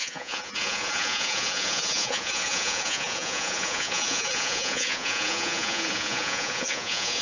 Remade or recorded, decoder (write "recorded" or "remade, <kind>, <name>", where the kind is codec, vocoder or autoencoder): remade, vocoder, Vocos